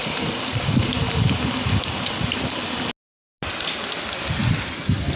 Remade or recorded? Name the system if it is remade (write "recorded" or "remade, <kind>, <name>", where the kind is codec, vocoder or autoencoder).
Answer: recorded